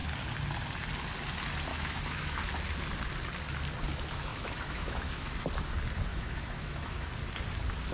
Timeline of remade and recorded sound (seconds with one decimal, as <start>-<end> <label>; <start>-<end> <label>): 0.0-1.7 recorded; 1.7-2.5 remade; 2.5-4.3 recorded; 4.3-5.5 remade; 5.5-6.1 recorded; 6.1-7.1 remade; 7.1-7.9 recorded